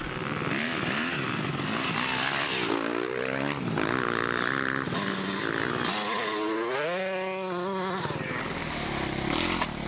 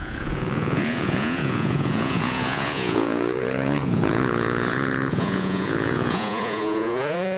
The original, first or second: first